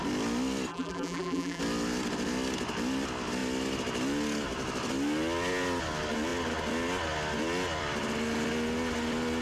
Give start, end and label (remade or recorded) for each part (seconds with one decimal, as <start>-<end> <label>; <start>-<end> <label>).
0.0-0.7 recorded; 0.7-1.6 remade; 1.6-9.4 recorded